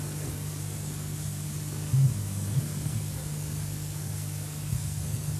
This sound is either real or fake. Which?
fake